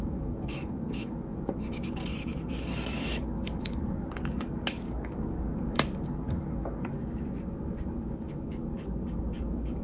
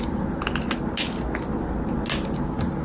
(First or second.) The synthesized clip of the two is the first